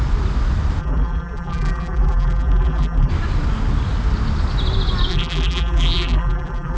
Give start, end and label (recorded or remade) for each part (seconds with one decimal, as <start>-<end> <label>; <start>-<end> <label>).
0.0-0.8 recorded; 0.8-3.1 remade; 3.1-5.1 recorded; 5.1-6.8 remade